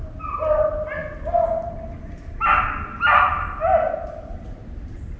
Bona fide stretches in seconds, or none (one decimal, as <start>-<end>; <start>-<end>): 0.0-5.2